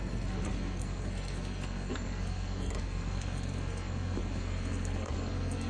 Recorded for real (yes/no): no